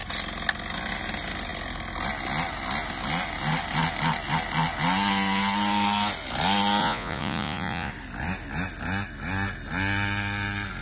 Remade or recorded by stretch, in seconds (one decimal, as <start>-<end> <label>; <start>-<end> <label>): 0.0-6.8 recorded; 6.8-7.9 remade; 7.9-10.8 recorded